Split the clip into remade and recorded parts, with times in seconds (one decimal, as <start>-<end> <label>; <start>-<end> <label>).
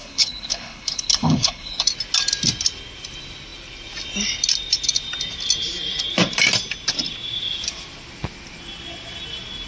0.0-1.8 remade; 1.8-9.7 recorded